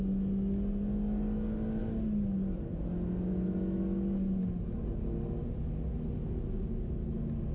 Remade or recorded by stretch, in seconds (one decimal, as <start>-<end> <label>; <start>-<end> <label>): 0.0-7.5 recorded